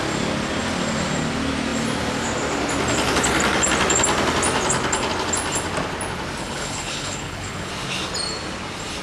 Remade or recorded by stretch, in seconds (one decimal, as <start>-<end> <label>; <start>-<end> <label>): 0.0-6.4 recorded; 6.4-7.7 remade; 7.7-9.0 recorded